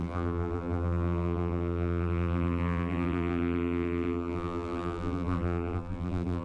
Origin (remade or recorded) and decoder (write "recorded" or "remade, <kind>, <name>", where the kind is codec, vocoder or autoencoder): remade, vocoder, BigVGAN v2